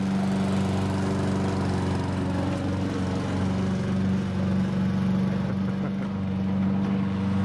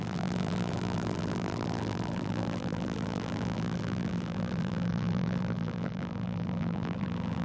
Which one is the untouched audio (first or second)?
first